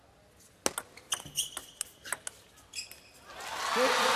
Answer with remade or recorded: recorded